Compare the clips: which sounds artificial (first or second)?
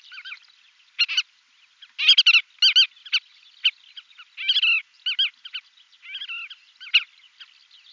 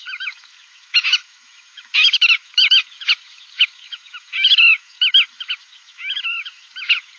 second